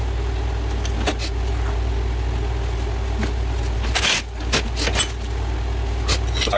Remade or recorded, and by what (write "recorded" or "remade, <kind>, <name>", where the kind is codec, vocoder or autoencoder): recorded